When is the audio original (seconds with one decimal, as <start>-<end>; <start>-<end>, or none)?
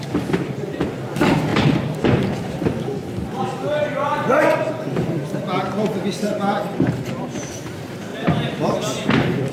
5.2-6.0